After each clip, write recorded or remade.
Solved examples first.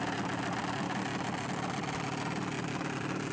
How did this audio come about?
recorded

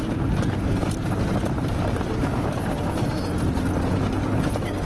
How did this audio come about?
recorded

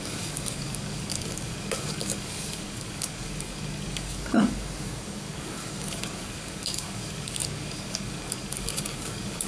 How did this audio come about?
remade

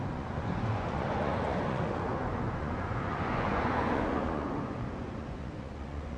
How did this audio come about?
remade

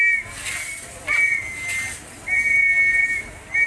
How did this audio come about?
recorded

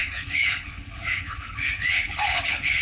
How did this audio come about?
remade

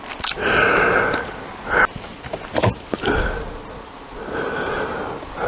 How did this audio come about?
recorded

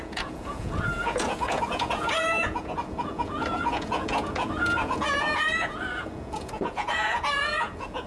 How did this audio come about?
remade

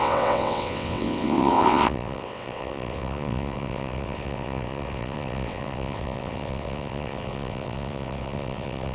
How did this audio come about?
remade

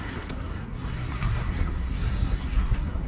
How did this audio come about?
remade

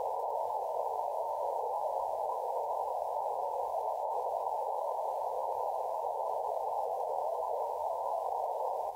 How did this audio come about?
remade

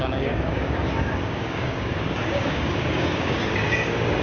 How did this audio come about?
remade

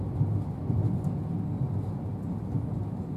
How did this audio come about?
recorded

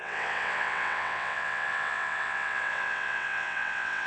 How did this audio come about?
remade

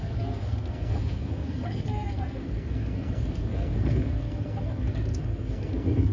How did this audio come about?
remade